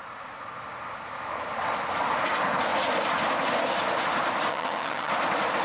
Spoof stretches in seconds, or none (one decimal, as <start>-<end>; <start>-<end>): 4.5-5.1

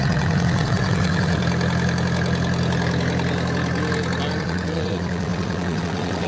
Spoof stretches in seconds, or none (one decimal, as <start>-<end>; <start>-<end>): 0.0-1.4; 4.4-6.3

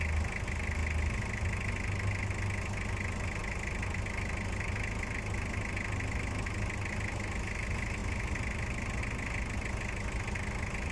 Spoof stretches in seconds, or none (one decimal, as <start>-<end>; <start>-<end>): none

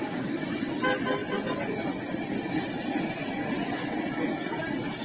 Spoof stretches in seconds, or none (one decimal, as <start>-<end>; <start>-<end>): 1.2-2.0

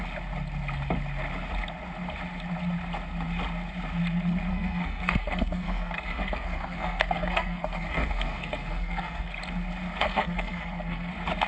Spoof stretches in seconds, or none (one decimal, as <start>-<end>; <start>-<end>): 4.5-9.3; 10.0-11.1